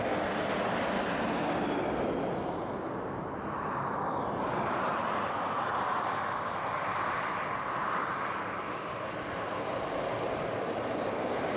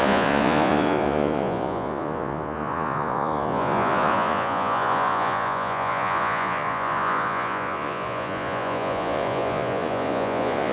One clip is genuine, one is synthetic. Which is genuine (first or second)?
first